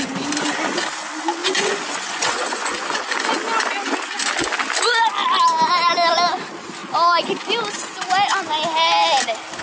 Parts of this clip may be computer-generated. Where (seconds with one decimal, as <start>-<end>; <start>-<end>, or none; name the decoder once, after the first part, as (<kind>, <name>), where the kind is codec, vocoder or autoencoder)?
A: 1.4-3.2 (vocoder, Vocos)